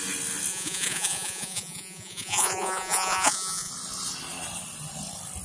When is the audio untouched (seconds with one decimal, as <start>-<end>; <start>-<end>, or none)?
0.0-0.5; 3.7-5.4